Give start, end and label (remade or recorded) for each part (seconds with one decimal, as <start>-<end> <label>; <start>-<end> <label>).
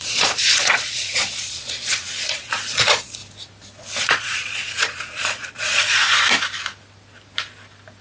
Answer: 0.0-3.2 remade; 3.2-4.0 recorded; 4.0-6.0 remade; 6.0-8.0 recorded